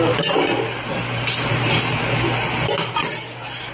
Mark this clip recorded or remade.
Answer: recorded